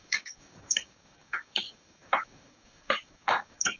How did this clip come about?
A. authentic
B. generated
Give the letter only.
B